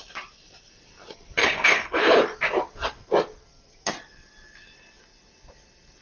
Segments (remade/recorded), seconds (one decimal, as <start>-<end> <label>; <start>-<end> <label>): 0.0-1.4 recorded; 1.4-2.2 remade; 2.2-6.0 recorded